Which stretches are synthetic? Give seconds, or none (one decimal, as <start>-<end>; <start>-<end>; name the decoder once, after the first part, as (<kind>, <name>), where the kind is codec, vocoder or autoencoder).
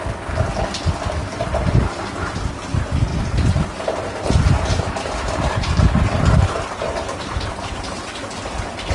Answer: 1.2-2.5 (vocoder, BigVGAN v2); 3.1-7.8